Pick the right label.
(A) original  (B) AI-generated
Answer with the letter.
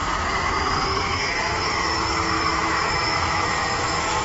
B